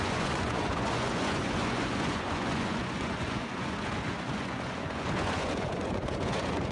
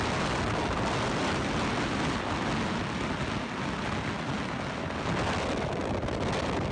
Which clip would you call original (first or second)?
second